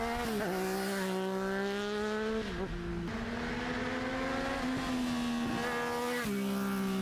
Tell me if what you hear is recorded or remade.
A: recorded